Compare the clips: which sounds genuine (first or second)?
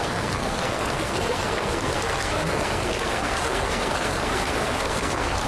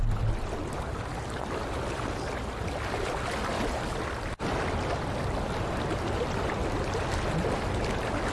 second